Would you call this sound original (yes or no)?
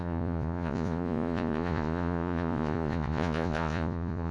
no